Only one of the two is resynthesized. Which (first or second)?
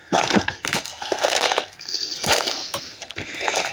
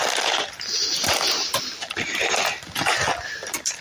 first